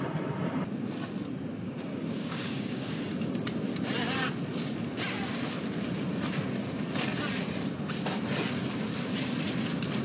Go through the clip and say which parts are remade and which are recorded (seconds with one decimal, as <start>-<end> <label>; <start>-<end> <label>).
0.0-1.5 recorded; 1.5-3.0 remade; 3.0-10.0 recorded